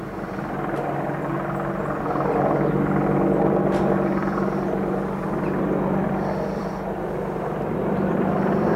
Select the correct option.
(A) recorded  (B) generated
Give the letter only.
A